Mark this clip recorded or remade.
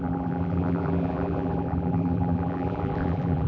remade